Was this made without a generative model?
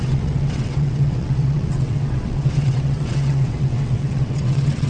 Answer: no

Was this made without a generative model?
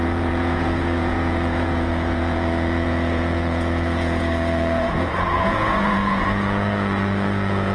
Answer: no